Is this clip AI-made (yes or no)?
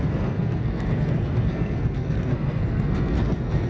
yes